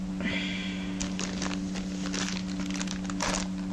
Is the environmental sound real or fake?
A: real